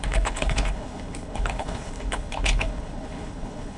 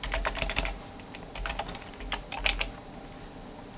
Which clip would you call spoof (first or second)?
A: first